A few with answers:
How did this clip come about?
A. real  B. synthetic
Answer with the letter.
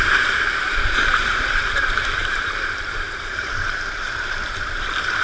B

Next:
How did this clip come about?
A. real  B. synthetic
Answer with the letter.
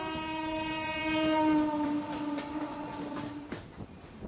B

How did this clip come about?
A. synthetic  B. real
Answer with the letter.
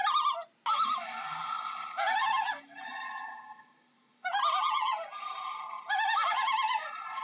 B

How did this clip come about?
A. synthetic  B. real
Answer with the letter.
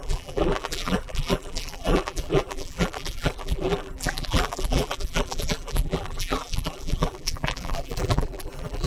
A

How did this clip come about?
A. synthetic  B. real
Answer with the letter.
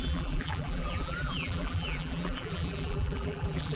A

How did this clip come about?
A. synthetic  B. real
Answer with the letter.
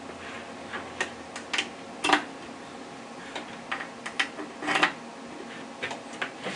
B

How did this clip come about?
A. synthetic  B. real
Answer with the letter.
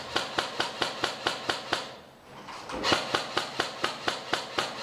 B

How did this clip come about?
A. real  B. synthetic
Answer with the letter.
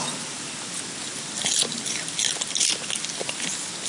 A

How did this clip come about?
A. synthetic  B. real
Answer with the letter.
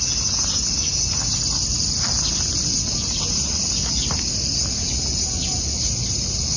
B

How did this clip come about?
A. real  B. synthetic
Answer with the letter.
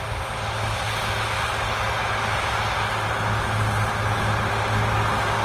A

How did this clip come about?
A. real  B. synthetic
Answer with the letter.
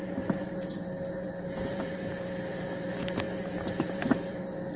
B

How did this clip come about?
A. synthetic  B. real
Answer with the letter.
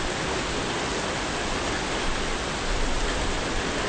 B